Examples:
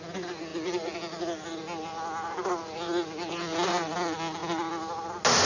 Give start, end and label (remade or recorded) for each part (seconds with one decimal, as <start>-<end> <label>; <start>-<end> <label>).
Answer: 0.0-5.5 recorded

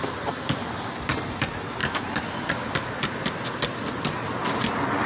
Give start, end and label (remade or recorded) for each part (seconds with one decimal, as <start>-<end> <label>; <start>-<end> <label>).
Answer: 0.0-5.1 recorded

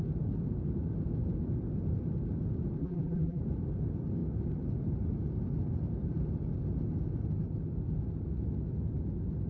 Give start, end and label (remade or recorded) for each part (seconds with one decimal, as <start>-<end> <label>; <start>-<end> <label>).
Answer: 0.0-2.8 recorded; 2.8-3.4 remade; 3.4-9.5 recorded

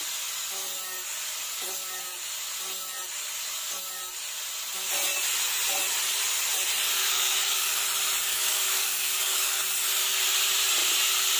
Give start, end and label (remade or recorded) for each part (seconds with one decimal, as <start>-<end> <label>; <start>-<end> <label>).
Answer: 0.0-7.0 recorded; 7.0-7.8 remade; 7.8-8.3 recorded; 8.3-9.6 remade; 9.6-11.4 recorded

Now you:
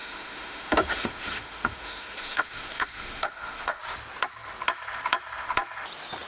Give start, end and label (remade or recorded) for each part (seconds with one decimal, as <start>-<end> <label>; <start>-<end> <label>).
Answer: 0.0-3.8 remade; 3.8-6.3 recorded

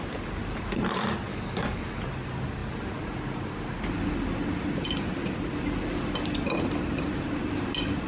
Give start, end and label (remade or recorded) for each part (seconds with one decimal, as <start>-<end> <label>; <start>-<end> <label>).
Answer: 0.0-1.3 recorded; 1.3-2.0 remade; 2.0-8.1 recorded

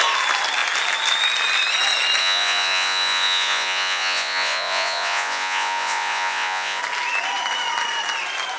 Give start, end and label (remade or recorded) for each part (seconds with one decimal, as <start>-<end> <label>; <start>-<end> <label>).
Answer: 0.0-2.2 recorded; 2.2-6.8 remade; 6.8-8.6 recorded

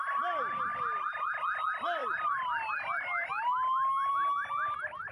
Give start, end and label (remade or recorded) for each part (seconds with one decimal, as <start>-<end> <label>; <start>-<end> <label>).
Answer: 0.0-5.1 recorded